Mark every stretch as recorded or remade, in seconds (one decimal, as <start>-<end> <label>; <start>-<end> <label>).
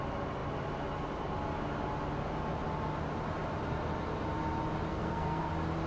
0.0-4.9 recorded; 4.9-5.5 remade; 5.5-5.9 recorded